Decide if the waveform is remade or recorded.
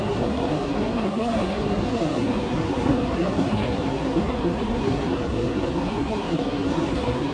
remade